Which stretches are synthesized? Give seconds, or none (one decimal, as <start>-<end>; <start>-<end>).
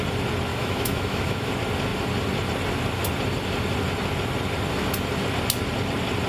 0.5-1.5